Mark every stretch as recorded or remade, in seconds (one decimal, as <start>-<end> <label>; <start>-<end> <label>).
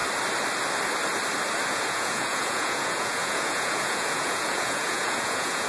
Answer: 0.0-1.7 recorded; 1.7-5.7 remade